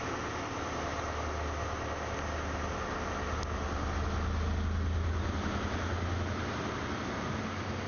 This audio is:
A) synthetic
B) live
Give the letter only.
B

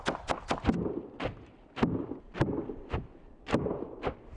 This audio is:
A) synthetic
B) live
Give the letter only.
B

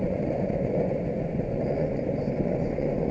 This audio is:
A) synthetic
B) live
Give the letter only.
A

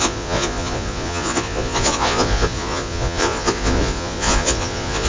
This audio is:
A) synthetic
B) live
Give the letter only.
A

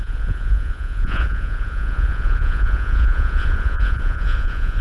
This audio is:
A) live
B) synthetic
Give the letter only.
B